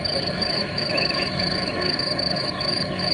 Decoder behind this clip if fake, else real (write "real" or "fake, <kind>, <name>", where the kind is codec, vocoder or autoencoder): fake, autoencoder, DAC-VAE